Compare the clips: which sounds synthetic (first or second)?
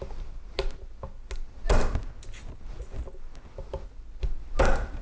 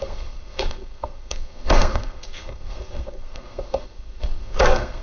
second